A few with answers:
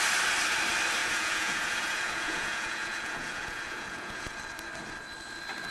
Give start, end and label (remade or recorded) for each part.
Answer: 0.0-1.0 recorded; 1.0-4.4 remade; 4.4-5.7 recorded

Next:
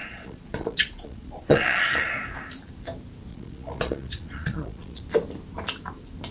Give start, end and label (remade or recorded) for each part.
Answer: 0.0-2.1 remade; 2.1-3.3 recorded; 3.3-5.0 remade; 5.0-6.3 recorded

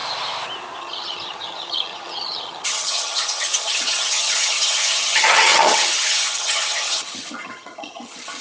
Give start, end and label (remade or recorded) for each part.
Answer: 0.0-0.8 recorded; 0.8-8.4 remade

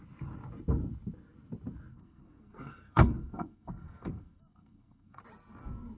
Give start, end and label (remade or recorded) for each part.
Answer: 0.0-1.9 recorded; 1.9-5.2 remade; 5.2-6.0 recorded

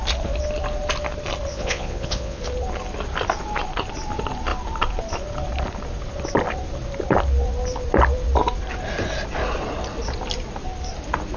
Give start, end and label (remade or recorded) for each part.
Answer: 0.0-1.5 recorded; 1.5-2.4 remade; 2.4-11.4 recorded